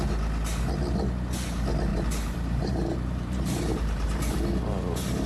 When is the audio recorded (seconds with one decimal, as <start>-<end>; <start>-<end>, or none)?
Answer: 0.0-1.9